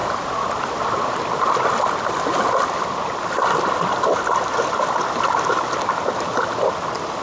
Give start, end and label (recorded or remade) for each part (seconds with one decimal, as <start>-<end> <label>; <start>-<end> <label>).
0.0-7.2 recorded